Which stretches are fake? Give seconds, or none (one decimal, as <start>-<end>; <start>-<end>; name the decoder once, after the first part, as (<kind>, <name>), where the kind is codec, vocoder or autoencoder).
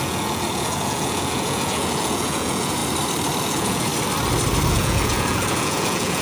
0.0-2.8 (vocoder, Vocos); 3.4-3.9; 4.7-6.2